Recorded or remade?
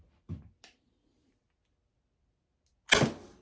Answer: recorded